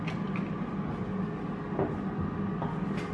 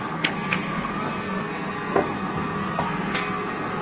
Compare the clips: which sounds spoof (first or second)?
second